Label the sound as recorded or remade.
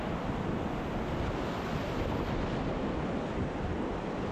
recorded